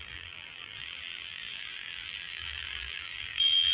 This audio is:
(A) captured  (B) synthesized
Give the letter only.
B